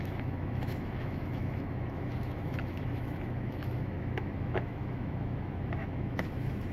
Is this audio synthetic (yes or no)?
yes